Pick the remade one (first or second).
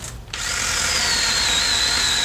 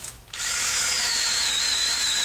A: second